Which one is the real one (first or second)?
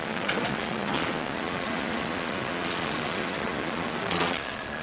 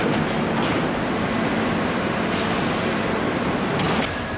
second